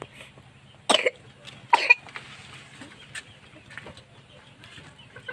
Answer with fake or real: real